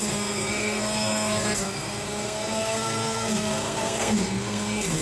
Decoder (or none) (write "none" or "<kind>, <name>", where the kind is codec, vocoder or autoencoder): codec, SNAC